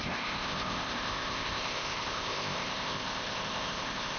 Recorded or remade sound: remade